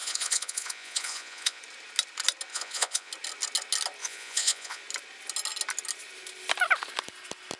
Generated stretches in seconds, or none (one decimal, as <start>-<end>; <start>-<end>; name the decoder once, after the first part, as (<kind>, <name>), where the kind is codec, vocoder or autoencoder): 0.0-1.6 (vocoder, Vocos); 2.5-3.1; 4.0-4.8